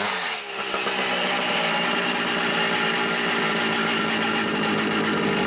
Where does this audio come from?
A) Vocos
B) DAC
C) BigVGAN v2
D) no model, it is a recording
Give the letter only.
D